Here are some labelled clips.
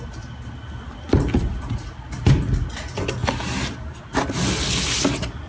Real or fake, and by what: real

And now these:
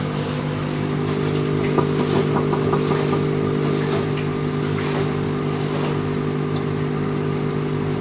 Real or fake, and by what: real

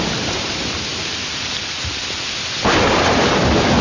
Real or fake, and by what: real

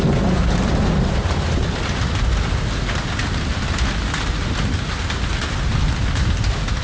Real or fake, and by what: real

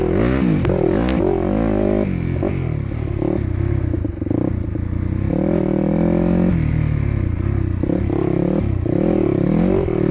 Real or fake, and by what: real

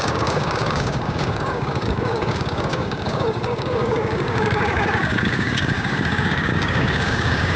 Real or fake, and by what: fake, codec, DAC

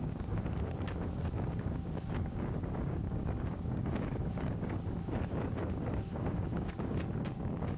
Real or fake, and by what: fake, codec, DAC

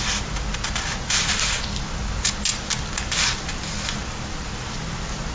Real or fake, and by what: real